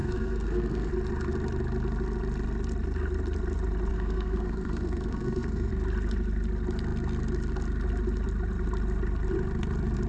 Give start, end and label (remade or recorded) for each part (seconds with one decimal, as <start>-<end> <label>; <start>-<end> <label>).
0.0-0.9 remade; 0.9-3.9 recorded; 3.9-5.7 remade; 5.7-10.1 recorded